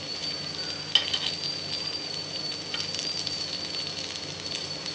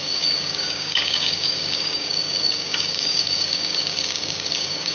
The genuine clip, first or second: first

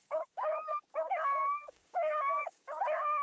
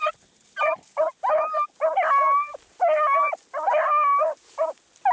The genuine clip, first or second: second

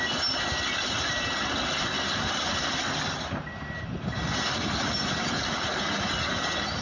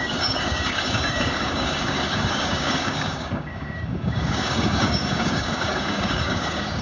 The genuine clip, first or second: first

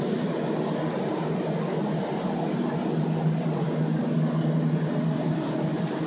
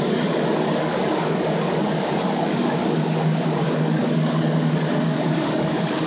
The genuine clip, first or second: first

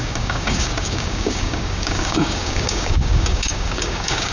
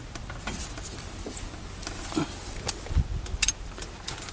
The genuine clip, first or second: second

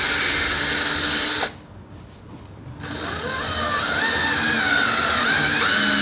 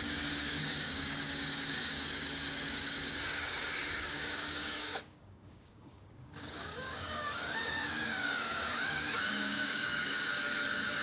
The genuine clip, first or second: first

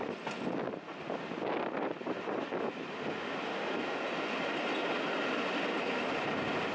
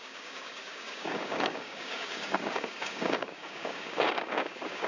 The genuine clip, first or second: first